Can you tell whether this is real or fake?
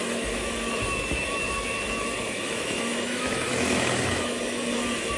fake